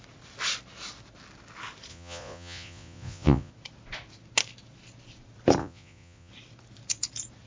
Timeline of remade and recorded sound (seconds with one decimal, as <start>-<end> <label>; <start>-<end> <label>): 0.0-1.9 recorded; 1.9-3.5 remade; 3.5-5.6 recorded; 5.6-6.3 remade; 6.3-7.5 recorded